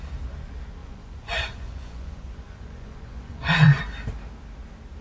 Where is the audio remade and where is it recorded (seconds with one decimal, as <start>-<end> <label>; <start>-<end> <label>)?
0.0-0.8 recorded; 0.8-3.8 remade; 3.8-5.0 recorded